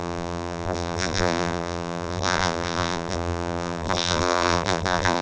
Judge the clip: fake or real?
fake